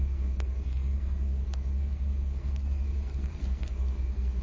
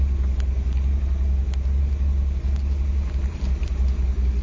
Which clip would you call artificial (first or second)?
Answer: first